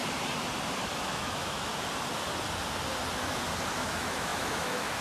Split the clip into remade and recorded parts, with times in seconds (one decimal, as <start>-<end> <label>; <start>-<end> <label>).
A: 0.0-0.9 recorded; 0.9-1.7 remade; 1.7-3.8 recorded; 3.8-5.0 remade